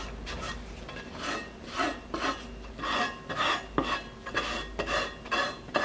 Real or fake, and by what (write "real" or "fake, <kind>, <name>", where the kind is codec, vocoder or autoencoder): real